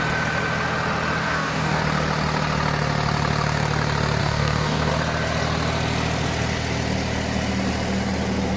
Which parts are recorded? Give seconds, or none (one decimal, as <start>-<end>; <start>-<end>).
0.0-1.2; 1.8-4.2; 4.9-8.6